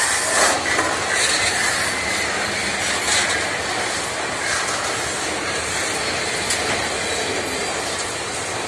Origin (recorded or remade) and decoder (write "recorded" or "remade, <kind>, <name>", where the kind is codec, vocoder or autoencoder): recorded